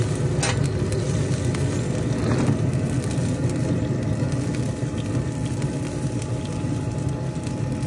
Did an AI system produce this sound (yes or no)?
no